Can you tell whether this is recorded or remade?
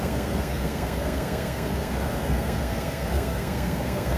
remade